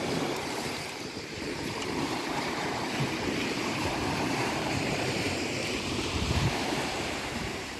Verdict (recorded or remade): remade